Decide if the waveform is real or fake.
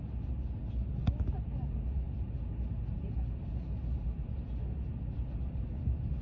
real